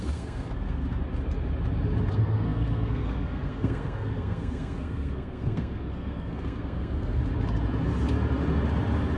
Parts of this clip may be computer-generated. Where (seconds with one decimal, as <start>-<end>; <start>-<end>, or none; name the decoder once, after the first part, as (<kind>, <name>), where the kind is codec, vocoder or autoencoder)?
0.0-1.0 (codec, SNAC); 2.1-7.2